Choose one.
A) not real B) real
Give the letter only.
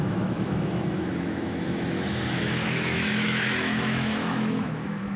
A